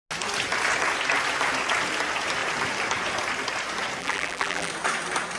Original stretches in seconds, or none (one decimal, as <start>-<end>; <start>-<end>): 0.0-4.0; 4.7-5.4